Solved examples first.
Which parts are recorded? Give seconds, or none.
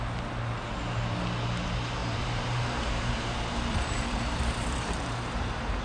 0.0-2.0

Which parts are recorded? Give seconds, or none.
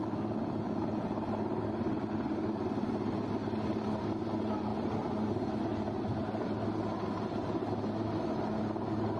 0.0-9.2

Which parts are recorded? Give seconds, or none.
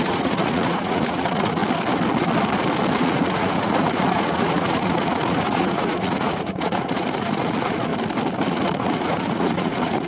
1.6-3.0; 7.9-8.5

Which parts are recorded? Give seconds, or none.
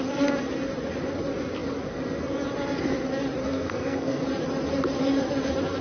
0.0-3.4; 4.2-5.8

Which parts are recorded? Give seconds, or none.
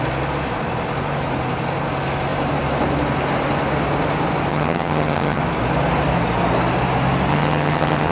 0.0-4.5; 5.4-7.3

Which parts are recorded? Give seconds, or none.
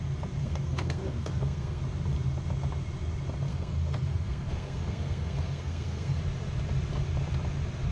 0.0-0.4; 1.8-3.5; 6.2-7.9